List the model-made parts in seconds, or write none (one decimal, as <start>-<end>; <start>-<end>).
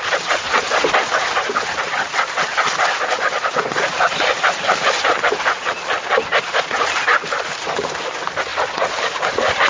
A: none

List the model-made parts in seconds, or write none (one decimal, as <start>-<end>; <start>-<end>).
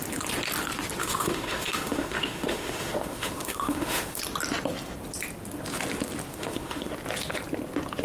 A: 1.0-4.2; 6.3-6.9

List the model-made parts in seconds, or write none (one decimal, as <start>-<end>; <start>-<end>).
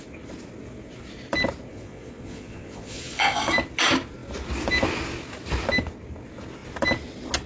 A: 1.7-3.4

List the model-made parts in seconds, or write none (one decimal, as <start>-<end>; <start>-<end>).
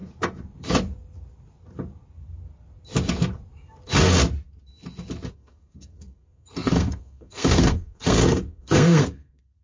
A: 5.3-9.6